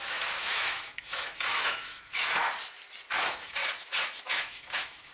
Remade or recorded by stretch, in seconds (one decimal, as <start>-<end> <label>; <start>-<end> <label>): 0.0-2.4 remade; 2.4-3.2 recorded; 3.2-3.6 remade; 3.6-4.3 recorded; 4.3-5.1 remade